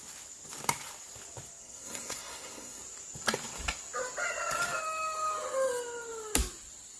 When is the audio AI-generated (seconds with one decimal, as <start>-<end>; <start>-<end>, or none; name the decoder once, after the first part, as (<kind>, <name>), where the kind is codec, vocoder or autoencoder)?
1.6-2.8 (codec, SNAC)